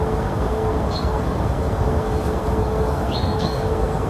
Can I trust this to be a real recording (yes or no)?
no